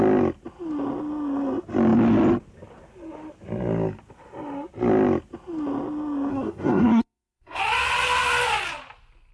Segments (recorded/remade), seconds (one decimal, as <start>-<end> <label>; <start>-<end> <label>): 0.0-6.3 recorded; 6.3-7.6 remade; 7.6-9.3 recorded